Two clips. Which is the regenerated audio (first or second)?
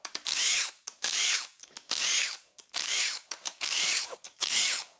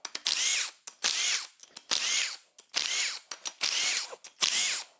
first